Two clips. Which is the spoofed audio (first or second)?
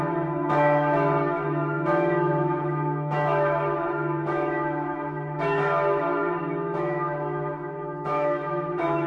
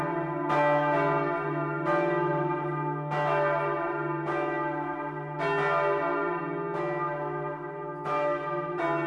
first